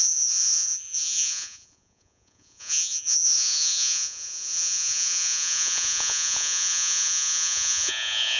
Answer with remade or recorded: remade